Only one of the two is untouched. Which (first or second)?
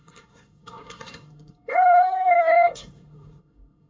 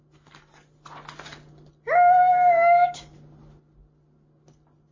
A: second